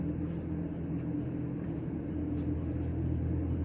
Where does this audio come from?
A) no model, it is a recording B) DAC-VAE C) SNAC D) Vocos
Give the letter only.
A